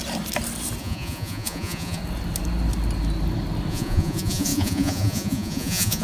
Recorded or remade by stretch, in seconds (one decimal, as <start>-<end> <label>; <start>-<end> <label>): 0.0-0.8 recorded; 0.8-2.0 remade; 2.0-3.7 recorded; 3.7-6.0 remade

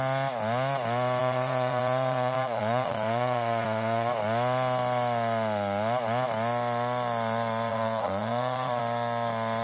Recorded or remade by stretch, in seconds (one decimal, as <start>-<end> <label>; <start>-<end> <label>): 0.0-1.2 recorded; 1.2-4.1 remade; 4.1-7.7 recorded; 7.7-8.8 remade; 8.8-9.6 recorded

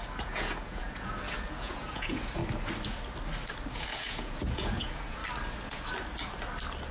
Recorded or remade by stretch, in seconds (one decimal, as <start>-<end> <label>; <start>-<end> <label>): 0.0-2.4 remade; 2.4-3.7 recorded; 3.7-5.2 remade; 5.2-6.9 recorded